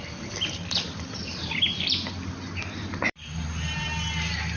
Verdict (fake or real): fake